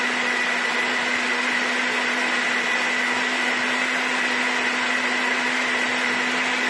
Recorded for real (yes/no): yes